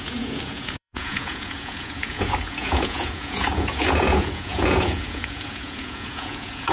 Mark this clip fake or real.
fake